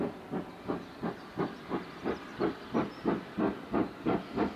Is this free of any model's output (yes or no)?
yes